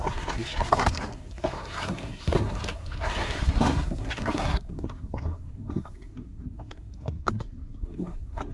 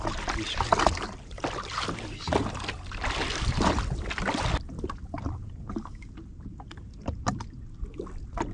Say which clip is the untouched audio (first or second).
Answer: second